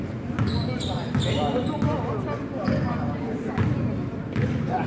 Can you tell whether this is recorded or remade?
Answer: recorded